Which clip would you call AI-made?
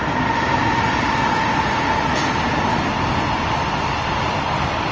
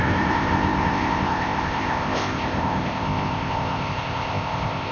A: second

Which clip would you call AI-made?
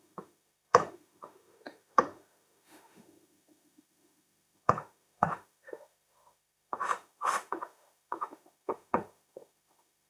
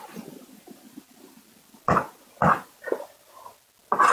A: first